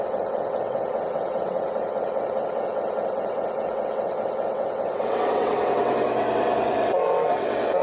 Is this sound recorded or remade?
remade